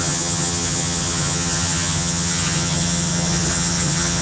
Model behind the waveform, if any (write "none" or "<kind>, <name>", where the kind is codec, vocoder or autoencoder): vocoder, HiFi-GAN